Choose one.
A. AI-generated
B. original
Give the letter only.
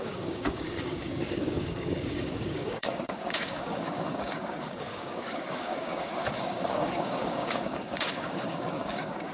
A